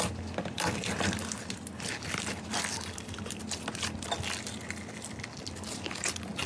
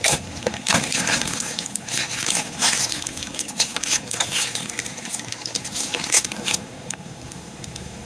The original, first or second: first